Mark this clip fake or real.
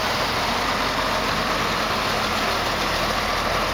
real